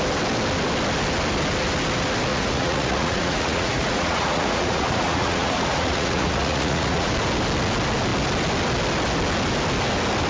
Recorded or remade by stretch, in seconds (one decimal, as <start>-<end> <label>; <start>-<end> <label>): 0.0-2.3 recorded; 2.3-7.1 remade; 7.1-10.3 recorded